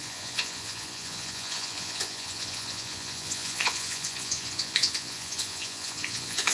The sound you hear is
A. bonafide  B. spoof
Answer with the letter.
B